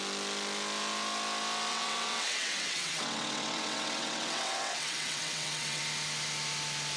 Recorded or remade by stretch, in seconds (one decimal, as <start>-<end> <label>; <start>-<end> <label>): 0.0-1.7 recorded; 1.7-5.8 remade; 5.8-7.0 recorded